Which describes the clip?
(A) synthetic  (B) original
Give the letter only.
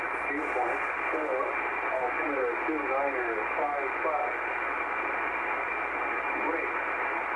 B